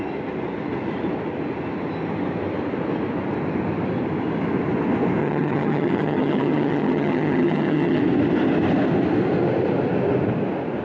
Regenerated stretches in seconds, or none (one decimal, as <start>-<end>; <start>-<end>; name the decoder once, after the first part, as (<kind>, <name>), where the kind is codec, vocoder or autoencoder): 5.2-8.0 (vocoder, HiFi-GAN)